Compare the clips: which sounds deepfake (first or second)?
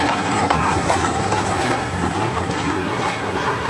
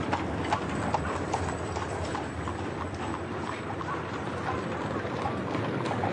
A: first